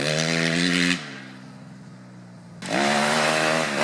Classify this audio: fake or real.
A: real